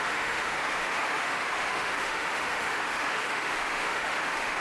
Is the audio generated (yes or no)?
yes